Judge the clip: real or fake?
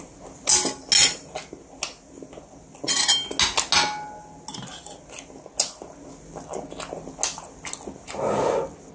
real